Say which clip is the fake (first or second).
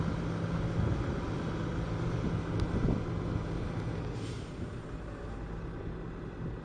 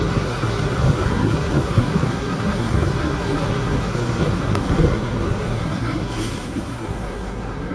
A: second